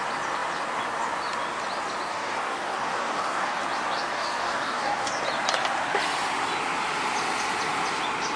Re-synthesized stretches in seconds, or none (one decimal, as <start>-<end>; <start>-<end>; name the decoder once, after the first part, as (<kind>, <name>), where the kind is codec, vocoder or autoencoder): 2.1-3.6 (codec, DAC); 4.1-5.1